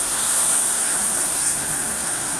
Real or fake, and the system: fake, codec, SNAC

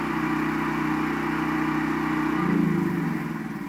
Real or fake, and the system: real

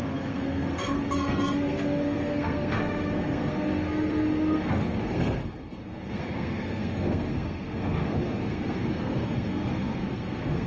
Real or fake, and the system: fake, codec, SNAC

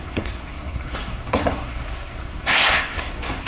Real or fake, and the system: fake, codec, SNAC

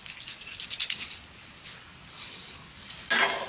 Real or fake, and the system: real